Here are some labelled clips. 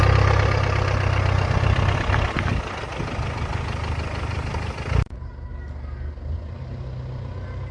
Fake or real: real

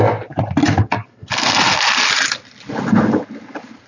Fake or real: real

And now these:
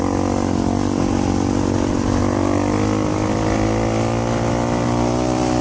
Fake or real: real